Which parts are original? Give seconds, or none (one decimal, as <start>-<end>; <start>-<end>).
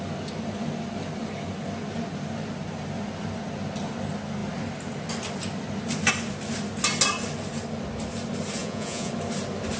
0.0-8.6; 9.1-9.8